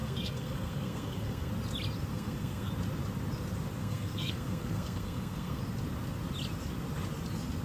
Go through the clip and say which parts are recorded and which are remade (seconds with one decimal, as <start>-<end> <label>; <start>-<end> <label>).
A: 0.0-1.5 remade; 1.5-2.1 recorded; 2.1-2.7 remade; 2.7-3.8 recorded; 3.8-5.6 remade; 5.6-7.6 recorded